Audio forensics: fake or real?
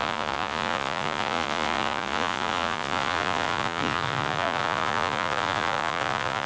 fake